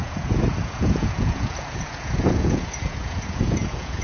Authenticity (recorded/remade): remade